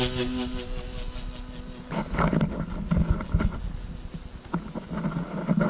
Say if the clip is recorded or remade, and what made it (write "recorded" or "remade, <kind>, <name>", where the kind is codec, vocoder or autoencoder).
recorded